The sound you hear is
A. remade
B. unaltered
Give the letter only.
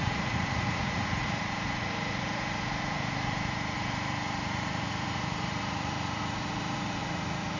A